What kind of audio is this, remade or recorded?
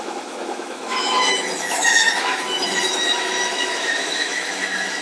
remade